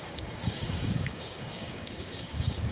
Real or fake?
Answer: fake